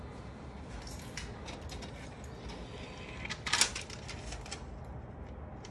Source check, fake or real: real